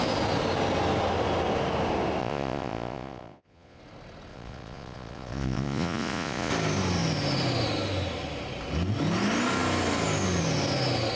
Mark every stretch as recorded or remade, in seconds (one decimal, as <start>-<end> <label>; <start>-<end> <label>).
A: 0.0-2.2 recorded; 2.2-3.8 remade; 3.8-4.3 recorded; 4.3-6.5 remade; 6.5-11.2 recorded